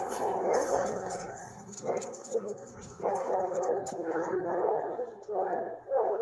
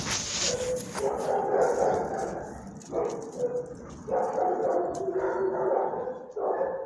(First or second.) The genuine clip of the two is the second